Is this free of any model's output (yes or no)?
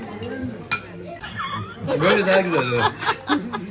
yes